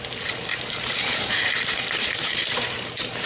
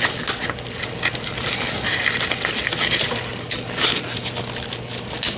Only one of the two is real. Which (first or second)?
second